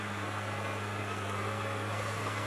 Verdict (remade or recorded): remade